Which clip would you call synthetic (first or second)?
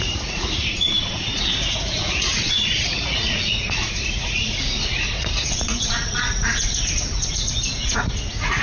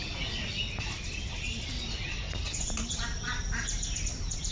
first